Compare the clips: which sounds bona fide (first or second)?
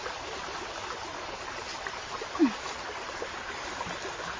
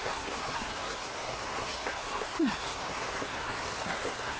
first